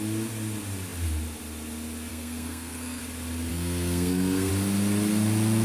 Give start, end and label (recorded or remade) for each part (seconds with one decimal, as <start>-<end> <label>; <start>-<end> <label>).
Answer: 0.0-2.1 recorded; 2.1-3.0 remade; 3.0-3.5 recorded; 3.5-4.5 remade; 4.5-5.6 recorded